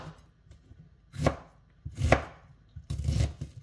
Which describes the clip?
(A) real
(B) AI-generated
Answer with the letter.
A